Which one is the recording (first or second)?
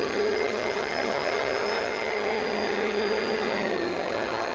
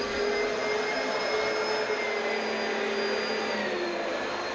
second